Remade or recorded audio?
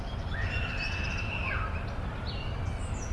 recorded